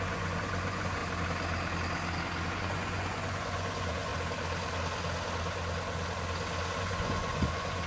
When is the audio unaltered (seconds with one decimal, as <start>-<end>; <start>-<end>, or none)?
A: 1.0-2.5; 4.1-6.8